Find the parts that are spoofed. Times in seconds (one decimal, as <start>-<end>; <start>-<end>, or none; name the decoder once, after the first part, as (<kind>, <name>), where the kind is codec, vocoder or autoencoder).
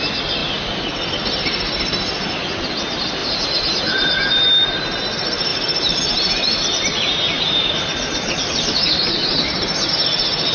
3.2-4.3 (vocoder, BigVGAN v2); 5.5-9.9